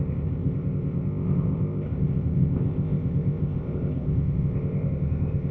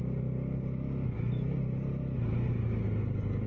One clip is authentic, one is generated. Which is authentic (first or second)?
second